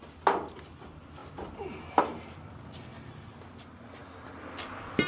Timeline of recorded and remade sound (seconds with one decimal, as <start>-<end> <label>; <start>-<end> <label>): 0.0-5.1 recorded